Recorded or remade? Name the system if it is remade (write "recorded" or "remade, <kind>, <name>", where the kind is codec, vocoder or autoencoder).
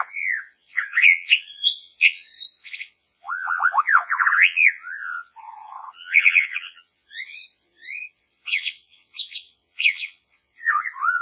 remade, vocoder, Vocos